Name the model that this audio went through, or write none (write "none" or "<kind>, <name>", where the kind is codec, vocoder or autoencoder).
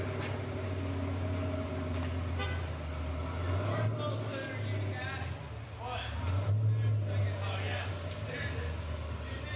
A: none